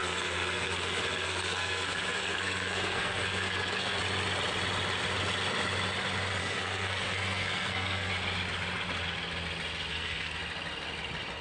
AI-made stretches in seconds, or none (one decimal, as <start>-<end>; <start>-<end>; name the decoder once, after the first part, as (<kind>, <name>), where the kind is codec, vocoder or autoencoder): 0.0-4.0 (codec, SNAC); 6.4-8.1; 9.9-10.4